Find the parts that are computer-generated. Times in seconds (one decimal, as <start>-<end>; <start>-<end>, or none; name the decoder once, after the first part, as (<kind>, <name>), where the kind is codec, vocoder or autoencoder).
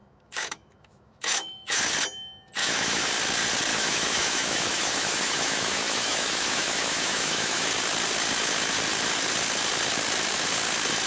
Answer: 0.0-1.8 (autoencoder, DAC-VAE); 2.6-3.1; 3.7-7.7